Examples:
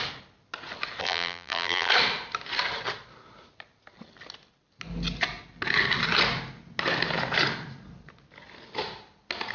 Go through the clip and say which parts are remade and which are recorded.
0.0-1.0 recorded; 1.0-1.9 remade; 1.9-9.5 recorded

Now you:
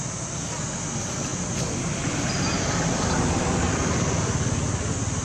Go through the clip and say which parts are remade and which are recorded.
0.0-5.2 recorded

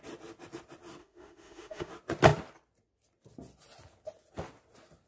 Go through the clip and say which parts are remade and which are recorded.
0.0-1.0 recorded; 1.0-1.9 remade; 1.9-5.1 recorded

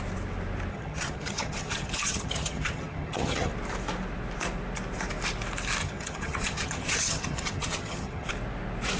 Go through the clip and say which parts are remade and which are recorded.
0.0-0.7 recorded; 0.7-3.5 remade; 3.5-5.8 recorded; 5.8-8.3 remade; 8.3-9.0 recorded

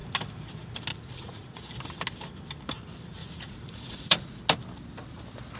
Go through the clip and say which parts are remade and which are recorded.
0.0-0.9 recorded; 0.9-1.7 remade; 1.7-3.2 recorded; 3.2-4.4 remade; 4.4-5.6 recorded